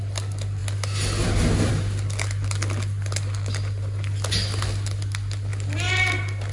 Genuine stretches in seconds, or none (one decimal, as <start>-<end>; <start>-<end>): 0.0-6.5